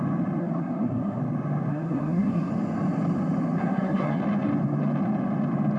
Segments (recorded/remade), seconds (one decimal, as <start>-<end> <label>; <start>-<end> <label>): 0.0-0.4 recorded; 0.4-1.2 remade; 1.2-1.7 recorded; 1.7-2.5 remade; 2.5-3.6 recorded; 3.6-4.2 remade; 4.2-5.8 recorded